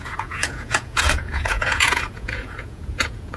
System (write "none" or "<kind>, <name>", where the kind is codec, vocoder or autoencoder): vocoder, Vocos